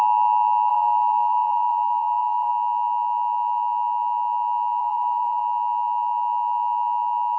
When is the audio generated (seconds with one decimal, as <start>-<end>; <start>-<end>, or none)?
0.7-2.5; 4.8-5.4